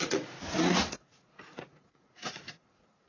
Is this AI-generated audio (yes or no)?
yes